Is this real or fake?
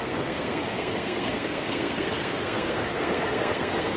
fake